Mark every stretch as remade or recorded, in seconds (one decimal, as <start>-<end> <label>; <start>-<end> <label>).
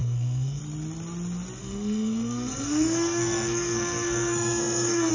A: 0.0-0.6 remade; 0.6-1.6 recorded; 1.6-5.1 remade